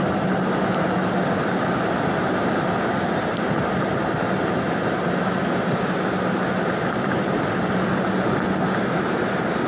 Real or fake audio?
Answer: real